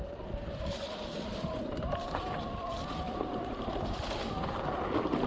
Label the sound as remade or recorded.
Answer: recorded